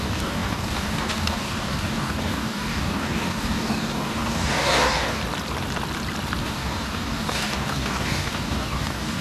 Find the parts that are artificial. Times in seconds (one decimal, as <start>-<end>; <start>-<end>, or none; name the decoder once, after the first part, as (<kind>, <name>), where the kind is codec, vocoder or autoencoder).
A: 0.0-5.2 (codec, DAC); 6.4-9.2